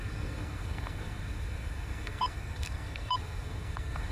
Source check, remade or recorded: remade